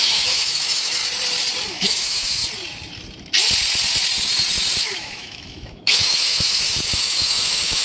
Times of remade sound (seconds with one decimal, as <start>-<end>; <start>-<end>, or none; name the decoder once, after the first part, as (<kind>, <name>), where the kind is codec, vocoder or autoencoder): 0.0-1.0 (autoencoder, DAC-VAE); 1.7-2.4; 4.8-7.8